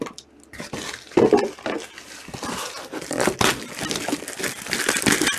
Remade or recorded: recorded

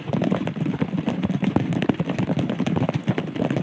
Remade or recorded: recorded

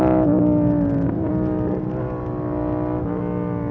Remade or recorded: recorded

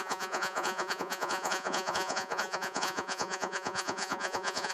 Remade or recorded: remade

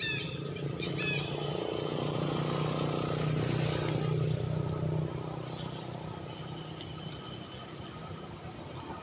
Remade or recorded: recorded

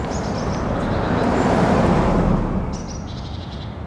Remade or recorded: recorded